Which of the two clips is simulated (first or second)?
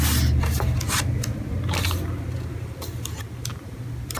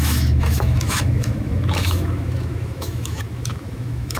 second